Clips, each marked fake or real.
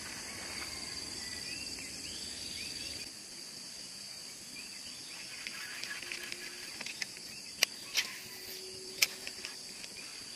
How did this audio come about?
real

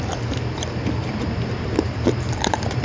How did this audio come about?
fake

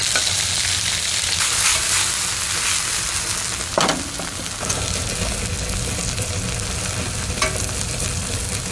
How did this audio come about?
real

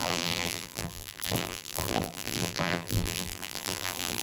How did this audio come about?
fake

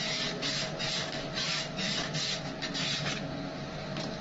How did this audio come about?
real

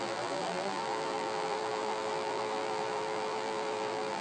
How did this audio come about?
fake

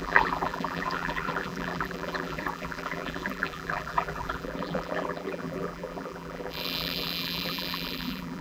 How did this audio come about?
fake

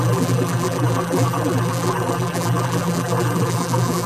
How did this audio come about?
fake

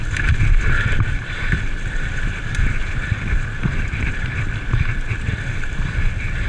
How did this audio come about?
real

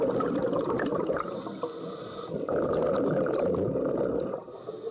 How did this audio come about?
real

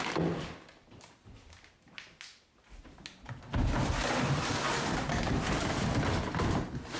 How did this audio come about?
real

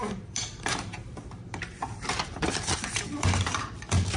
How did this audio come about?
fake